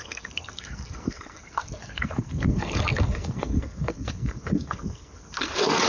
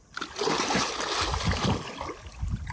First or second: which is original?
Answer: second